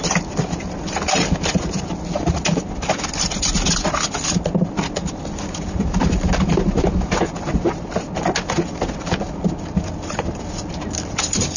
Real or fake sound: real